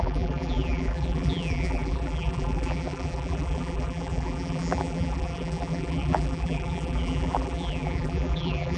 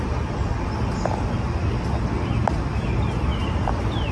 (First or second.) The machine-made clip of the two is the first